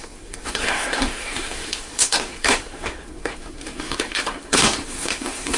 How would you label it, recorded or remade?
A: remade